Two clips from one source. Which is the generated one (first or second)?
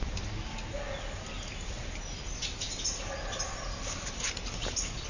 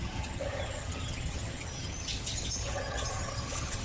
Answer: second